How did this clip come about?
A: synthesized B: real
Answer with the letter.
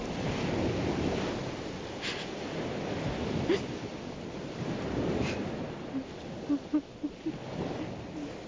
B